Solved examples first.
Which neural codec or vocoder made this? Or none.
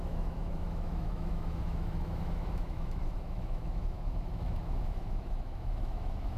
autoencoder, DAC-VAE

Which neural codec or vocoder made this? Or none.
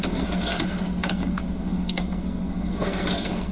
codec, SNAC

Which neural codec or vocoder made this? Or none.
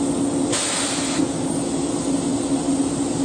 none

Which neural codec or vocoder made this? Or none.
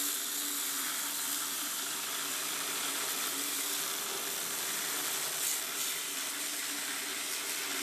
vocoder, BigVGAN v2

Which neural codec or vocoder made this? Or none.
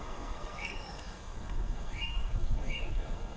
codec, SNAC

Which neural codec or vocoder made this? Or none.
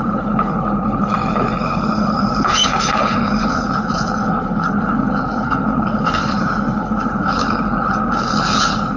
codec, HILCodec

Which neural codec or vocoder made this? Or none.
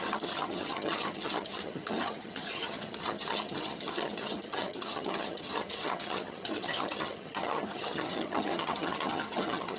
vocoder, HiFi-GAN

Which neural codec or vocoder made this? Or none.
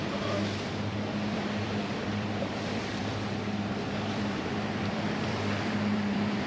vocoder, BigVGAN v2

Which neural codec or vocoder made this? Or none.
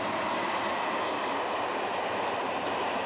none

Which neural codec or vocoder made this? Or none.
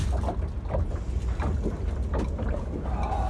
none